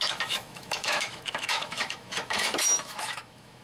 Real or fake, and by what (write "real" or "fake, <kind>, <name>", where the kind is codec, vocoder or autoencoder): fake, autoencoder, DAC-VAE